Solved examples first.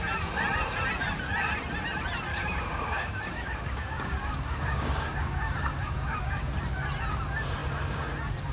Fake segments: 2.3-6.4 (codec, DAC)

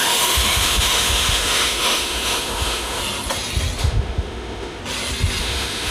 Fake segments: 0.0-3.0 (autoencoder, DAC-VAE); 3.8-4.8; 5.4-5.9

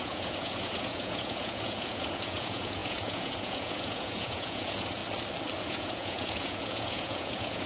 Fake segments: 0.0-5.0 (vocoder, Vocos); 5.6-7.7

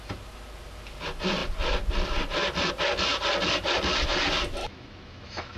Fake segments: 4.6-5.6 (autoencoder, DAC-VAE)

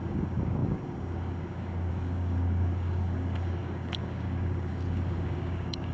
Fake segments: 0.0-5.9 (codec, DAC)

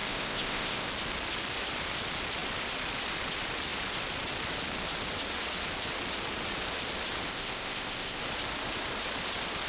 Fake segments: 0.0-0.9 (codec, ZipCodec); 7.3-8.2

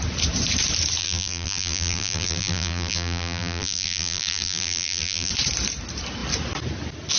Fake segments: 1.0-5.3 (vocoder, BigVGAN v2)

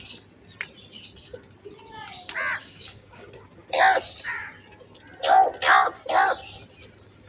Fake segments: 2.6-3.3 (codec, DAC)